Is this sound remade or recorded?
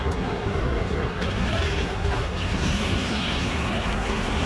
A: remade